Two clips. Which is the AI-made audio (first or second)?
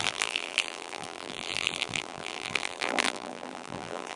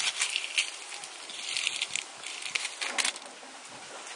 first